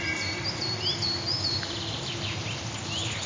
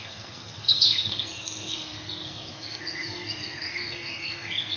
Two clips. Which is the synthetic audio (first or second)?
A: second